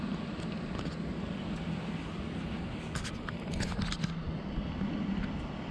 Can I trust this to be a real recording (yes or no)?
yes